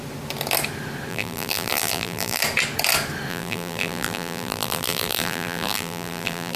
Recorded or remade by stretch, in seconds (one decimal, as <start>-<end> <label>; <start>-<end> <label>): 0.0-1.1 recorded; 1.1-2.4 remade; 2.4-3.3 recorded; 3.3-6.6 remade